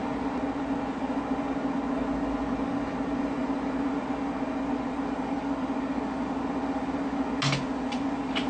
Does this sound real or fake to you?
real